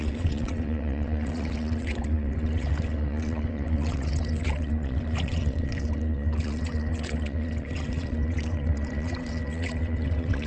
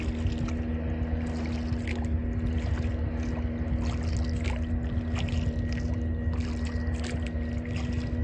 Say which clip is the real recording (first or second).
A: second